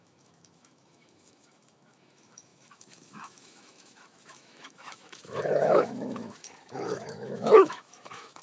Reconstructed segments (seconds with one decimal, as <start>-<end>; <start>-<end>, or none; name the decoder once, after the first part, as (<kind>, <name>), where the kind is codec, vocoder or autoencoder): 0.0-8.4 (autoencoder, DAC-VAE)